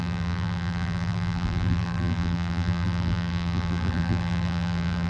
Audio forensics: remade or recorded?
remade